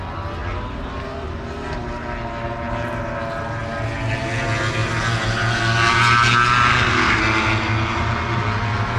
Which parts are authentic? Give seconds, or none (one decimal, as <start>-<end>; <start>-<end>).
0.0-6.7; 7.2-9.0